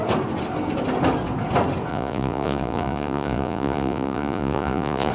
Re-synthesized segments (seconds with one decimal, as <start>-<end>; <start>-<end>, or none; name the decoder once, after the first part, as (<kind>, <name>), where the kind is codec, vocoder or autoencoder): 1.9-5.1 (vocoder, Vocos)